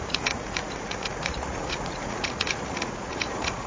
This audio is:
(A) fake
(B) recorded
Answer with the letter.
A